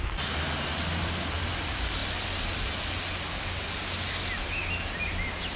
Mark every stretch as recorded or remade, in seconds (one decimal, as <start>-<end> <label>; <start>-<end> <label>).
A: 0.0-5.6 recorded